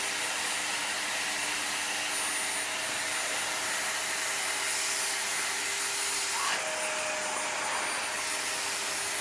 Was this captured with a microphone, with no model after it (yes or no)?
yes